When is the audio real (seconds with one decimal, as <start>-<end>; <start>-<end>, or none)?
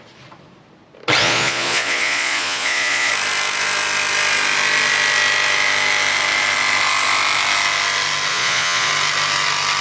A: 0.0-1.2; 3.1-8.3; 8.9-9.8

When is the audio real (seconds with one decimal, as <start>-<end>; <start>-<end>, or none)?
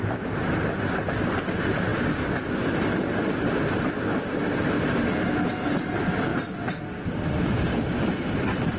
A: 0.0-8.8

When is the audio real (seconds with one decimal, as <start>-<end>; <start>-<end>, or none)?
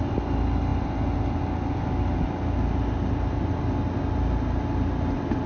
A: 0.0-5.5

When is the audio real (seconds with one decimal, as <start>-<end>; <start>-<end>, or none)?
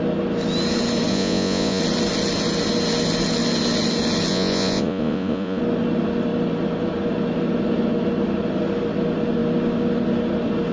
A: 0.0-1.1; 1.8-4.3; 5.6-10.7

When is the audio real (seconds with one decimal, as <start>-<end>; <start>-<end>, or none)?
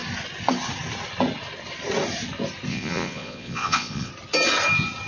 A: 0.0-2.7; 4.1-5.1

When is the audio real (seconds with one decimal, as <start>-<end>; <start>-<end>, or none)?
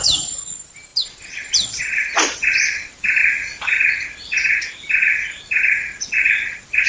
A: 0.0-6.9